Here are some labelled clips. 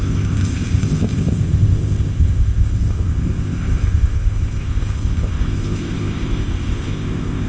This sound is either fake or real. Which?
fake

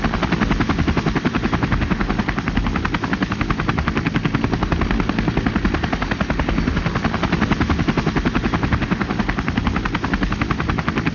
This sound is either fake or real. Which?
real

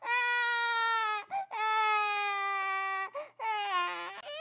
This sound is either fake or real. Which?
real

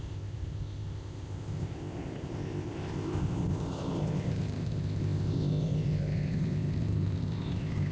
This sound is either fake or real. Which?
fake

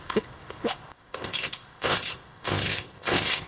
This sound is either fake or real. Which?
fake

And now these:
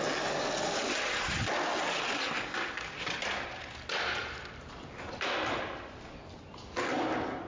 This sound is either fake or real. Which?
real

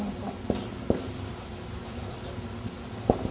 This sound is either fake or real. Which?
real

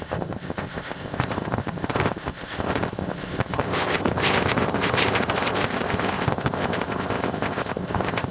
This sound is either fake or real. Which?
fake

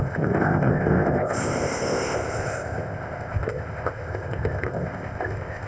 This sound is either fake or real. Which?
fake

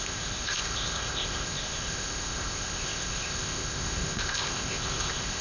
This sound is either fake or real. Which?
fake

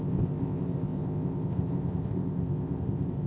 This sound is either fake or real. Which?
fake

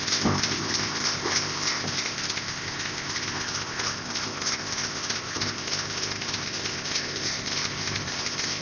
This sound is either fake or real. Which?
fake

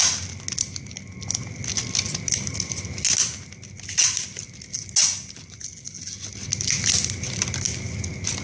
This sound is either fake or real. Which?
real